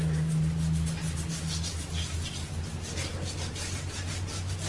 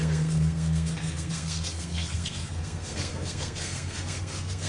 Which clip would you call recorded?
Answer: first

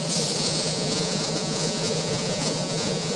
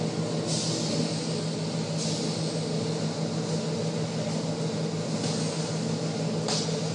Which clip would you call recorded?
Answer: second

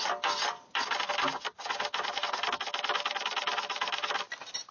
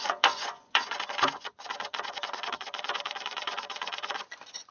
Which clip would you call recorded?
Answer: first